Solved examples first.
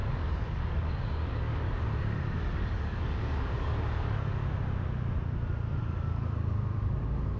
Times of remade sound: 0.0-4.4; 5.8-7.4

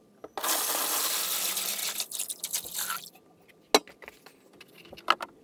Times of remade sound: none

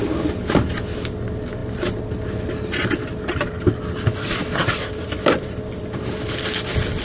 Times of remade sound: none

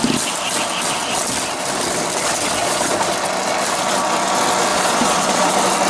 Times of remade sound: 2.6-3.1; 4.7-5.5

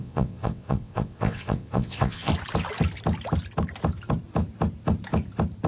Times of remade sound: 0.0-2.3

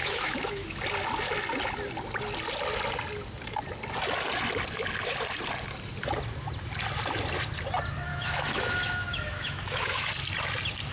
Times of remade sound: 0.0-0.8; 8.1-10.1